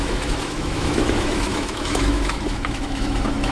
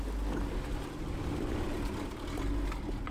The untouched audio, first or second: second